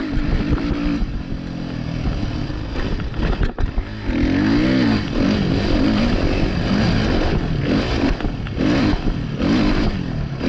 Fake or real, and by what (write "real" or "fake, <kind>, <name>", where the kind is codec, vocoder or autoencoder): real